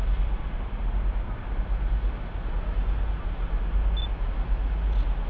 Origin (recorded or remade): recorded